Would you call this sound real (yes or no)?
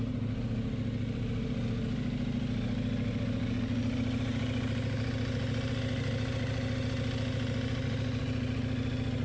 yes